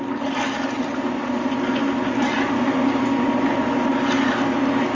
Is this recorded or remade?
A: recorded